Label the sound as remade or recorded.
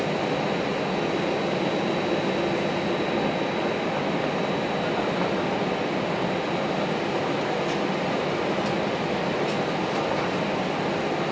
recorded